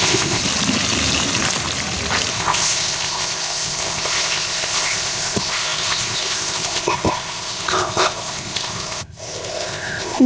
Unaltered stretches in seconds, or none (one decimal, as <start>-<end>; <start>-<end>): 0.4-2.3